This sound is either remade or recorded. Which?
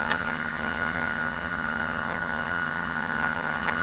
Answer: remade